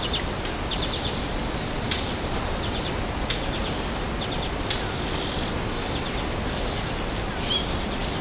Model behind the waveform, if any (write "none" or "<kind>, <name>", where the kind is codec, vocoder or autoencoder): none